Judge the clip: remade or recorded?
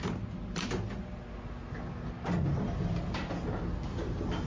recorded